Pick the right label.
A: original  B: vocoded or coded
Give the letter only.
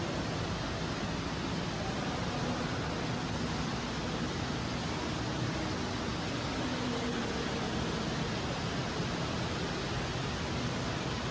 A